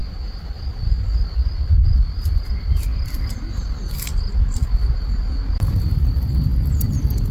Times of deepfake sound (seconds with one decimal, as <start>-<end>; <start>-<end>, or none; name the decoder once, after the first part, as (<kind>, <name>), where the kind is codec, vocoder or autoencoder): none